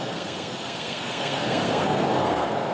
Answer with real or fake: fake